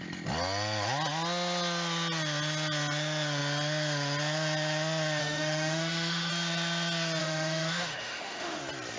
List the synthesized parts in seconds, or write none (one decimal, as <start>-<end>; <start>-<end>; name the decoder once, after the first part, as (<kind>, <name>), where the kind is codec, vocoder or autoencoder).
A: 5.2-6.3 (autoencoder, DAC-VAE); 7.2-8.6